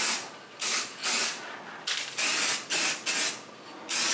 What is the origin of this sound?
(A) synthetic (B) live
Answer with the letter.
B